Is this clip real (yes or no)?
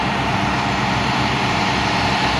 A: no